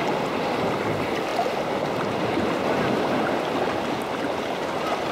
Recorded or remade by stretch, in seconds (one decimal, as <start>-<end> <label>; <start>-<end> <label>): 0.0-5.1 recorded